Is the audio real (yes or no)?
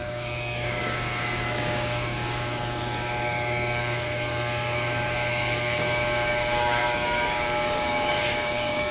no